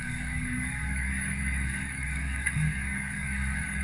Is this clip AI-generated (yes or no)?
yes